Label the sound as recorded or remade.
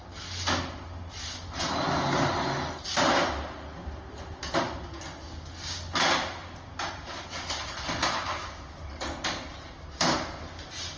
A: recorded